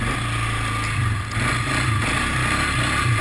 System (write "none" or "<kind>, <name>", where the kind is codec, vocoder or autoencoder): none